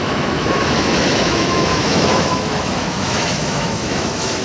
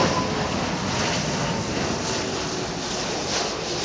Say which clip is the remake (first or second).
first